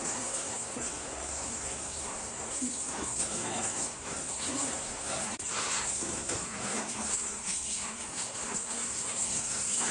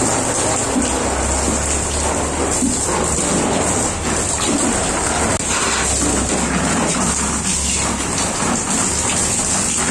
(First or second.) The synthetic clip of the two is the first